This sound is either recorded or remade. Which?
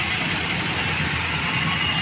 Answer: recorded